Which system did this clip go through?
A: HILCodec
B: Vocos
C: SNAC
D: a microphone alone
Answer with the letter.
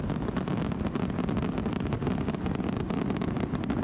D